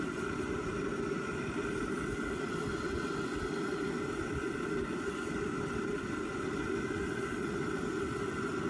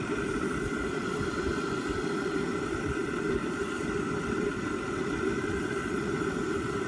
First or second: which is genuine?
first